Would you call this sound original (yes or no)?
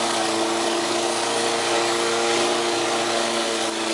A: no